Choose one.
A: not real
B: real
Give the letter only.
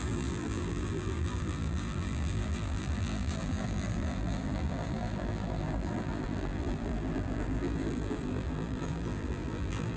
A